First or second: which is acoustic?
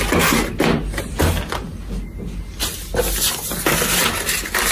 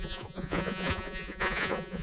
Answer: first